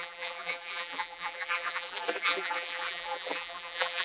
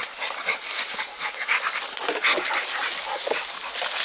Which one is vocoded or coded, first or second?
first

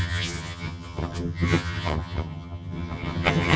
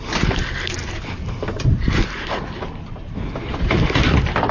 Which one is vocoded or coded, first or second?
first